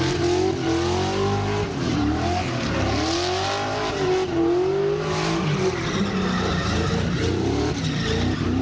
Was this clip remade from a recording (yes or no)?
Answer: no